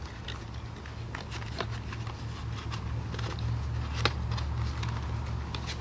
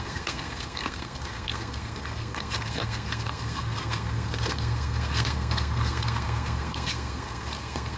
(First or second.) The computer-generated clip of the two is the second